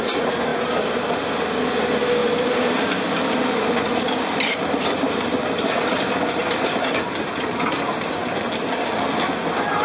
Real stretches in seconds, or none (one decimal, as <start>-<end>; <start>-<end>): 0.0-2.2; 7.0-9.8